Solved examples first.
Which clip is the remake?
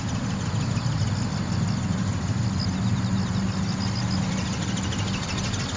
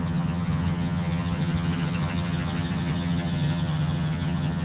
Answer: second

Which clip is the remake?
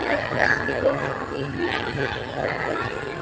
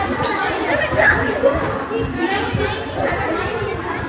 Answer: first